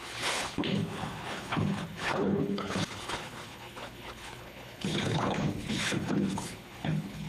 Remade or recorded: remade